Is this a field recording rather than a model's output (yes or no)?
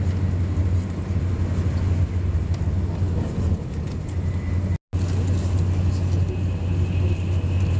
yes